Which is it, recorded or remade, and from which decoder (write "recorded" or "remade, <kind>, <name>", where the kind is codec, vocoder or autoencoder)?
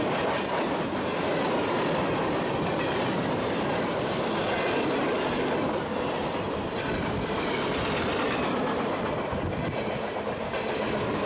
recorded